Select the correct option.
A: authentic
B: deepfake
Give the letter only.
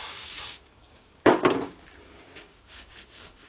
B